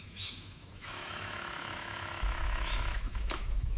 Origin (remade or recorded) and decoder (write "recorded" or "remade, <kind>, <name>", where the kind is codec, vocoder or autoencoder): remade, autoencoder, DAC-VAE